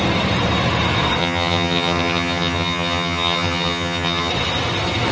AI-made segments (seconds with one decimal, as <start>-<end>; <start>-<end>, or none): 1.2-4.3